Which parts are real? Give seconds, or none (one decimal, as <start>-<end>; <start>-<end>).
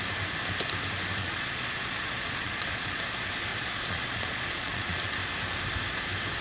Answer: 0.0-1.2; 3.0-3.5; 5.1-6.4